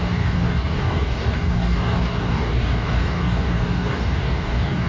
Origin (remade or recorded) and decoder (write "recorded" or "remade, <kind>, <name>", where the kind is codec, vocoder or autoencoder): remade, codec, DAC